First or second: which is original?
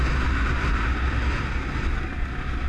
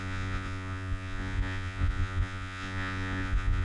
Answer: first